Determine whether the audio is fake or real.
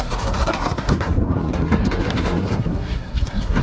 fake